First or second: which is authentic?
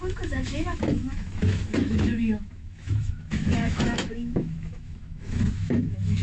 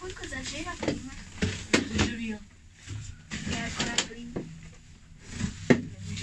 second